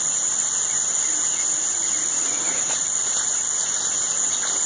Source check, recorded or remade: recorded